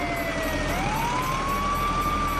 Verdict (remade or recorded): recorded